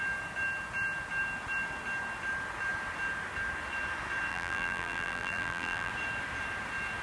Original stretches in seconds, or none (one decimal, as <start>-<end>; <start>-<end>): 0.0-4.3; 5.9-7.0